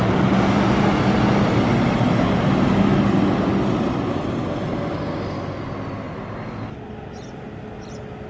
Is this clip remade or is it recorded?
recorded